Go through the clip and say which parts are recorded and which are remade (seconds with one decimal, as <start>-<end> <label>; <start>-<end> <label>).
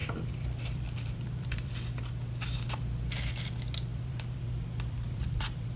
0.0-1.7 remade; 1.7-3.9 recorded; 3.9-5.8 remade